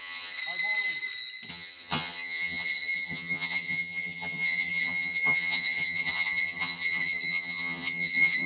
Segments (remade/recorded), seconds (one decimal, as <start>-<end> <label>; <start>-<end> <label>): 0.0-0.4 remade; 0.4-1.5 recorded; 1.5-8.5 remade